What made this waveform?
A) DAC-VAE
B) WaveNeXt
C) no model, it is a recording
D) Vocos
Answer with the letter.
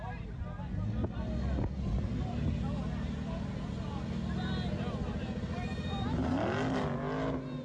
C